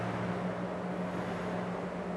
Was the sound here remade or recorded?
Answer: recorded